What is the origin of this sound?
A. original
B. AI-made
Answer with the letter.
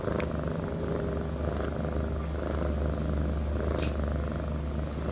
A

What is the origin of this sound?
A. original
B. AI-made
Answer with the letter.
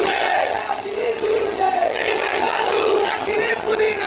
B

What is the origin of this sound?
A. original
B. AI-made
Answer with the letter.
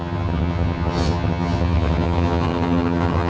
B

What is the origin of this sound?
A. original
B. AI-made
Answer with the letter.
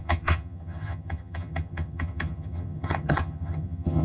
B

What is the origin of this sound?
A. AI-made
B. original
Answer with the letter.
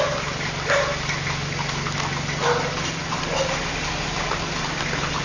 B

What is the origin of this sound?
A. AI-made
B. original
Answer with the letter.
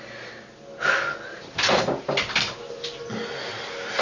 B